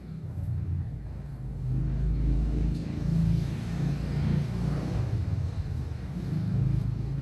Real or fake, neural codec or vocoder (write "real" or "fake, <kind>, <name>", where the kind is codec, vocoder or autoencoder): fake, codec, DAC